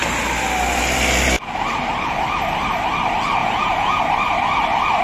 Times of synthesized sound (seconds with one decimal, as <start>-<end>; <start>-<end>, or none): 3.4-4.0